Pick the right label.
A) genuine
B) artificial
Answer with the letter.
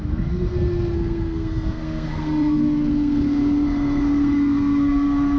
B